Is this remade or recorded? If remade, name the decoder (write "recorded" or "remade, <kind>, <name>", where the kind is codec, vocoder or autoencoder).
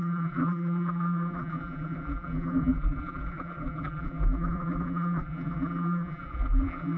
remade, vocoder, BigVGAN v2